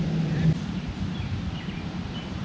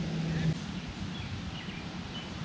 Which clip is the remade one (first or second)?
first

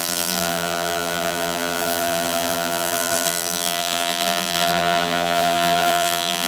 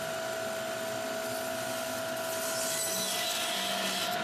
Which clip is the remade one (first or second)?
first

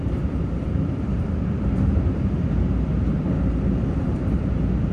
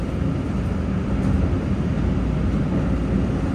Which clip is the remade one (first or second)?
first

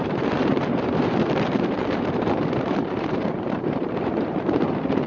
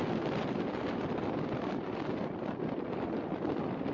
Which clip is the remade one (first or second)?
first